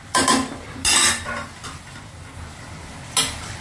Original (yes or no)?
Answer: yes